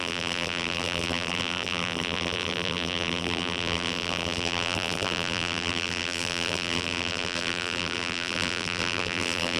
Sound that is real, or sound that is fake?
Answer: fake